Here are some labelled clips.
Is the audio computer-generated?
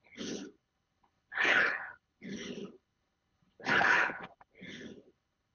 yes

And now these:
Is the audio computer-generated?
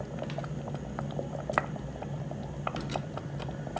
no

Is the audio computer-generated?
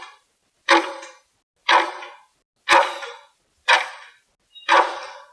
no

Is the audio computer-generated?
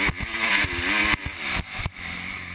no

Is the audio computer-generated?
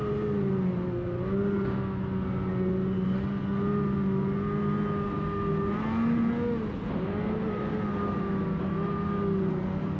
no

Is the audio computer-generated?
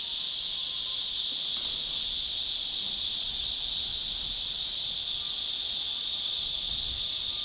no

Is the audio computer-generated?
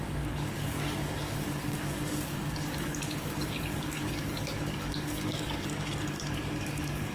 yes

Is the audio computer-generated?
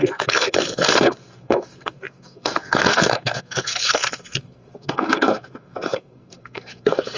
yes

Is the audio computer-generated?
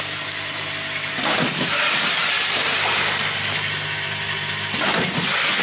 no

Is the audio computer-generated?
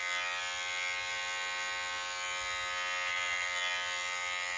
no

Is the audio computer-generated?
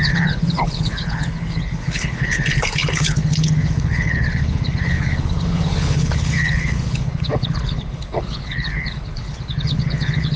yes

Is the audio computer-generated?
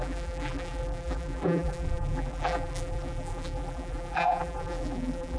yes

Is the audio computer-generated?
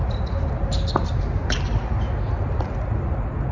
no